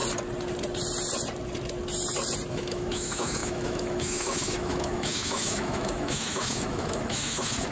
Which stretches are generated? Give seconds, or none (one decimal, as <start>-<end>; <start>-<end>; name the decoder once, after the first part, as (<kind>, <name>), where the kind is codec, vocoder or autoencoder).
2.5-7.7 (autoencoder, DAC-VAE)